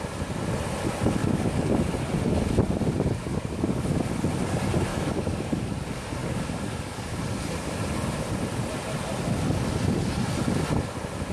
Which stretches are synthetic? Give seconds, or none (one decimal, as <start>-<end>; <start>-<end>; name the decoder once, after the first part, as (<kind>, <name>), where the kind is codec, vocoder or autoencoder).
1.2-2.0 (codec, DAC); 3.3-4.0; 4.9-5.7; 6.2-7.2